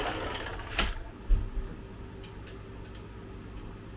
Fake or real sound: real